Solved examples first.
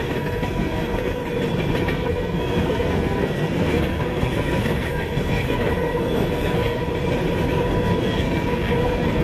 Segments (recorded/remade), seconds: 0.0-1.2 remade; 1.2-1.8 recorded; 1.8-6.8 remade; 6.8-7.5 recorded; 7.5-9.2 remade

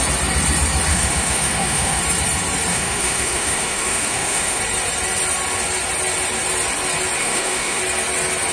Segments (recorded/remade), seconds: 0.0-0.9 recorded; 0.9-2.0 remade; 2.0-2.7 recorded; 2.7-4.6 remade; 4.6-7.2 recorded; 7.2-7.8 remade; 7.8-8.5 recorded

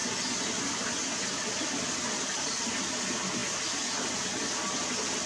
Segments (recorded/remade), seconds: 0.0-5.3 recorded

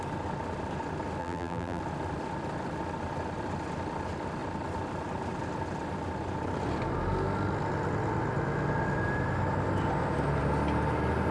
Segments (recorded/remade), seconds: 0.0-1.2 recorded; 1.2-1.8 remade; 1.8-11.3 recorded

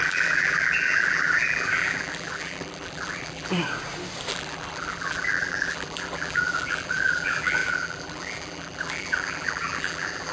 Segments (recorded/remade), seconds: 0.0-3.5 remade; 3.5-4.3 recorded; 4.3-10.3 remade

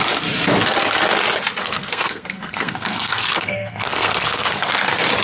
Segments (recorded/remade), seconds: 0.0-1.6 recorded; 1.6-4.7 remade; 4.7-5.2 recorded

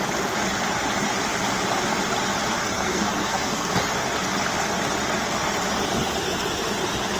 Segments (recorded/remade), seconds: 0.0-2.6 recorded; 2.6-3.7 remade; 3.7-7.2 recorded